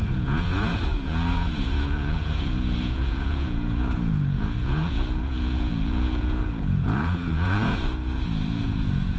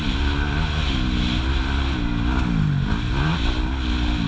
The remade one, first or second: first